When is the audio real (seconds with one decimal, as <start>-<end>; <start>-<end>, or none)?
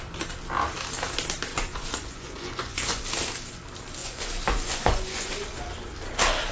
0.0-1.5; 3.0-4.0; 5.3-6.5